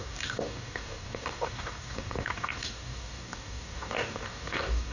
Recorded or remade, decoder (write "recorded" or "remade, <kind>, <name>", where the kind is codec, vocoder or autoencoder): remade, codec, DAC